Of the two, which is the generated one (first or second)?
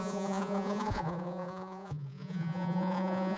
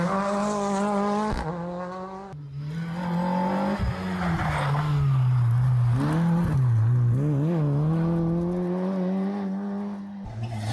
first